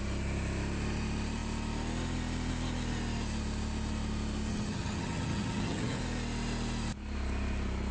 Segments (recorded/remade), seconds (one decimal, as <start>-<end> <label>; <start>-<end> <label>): 0.0-4.5 recorded; 4.5-6.0 remade; 6.0-7.9 recorded